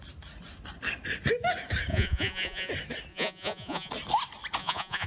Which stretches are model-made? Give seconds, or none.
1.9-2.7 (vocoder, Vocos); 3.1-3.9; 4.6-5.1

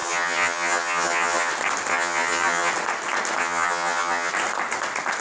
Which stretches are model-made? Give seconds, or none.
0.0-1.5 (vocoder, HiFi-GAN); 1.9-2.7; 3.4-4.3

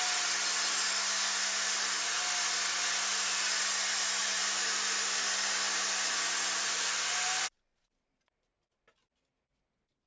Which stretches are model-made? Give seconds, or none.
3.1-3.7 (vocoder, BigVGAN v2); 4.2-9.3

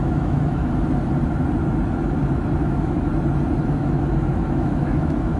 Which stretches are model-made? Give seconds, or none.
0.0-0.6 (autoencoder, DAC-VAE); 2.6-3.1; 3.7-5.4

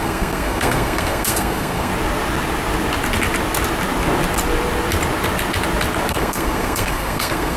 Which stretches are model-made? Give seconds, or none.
0.0-1.9 (codec, SNAC); 6.1-7.6